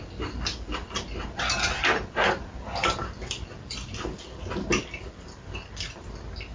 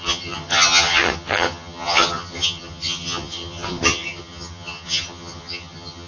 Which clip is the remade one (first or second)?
second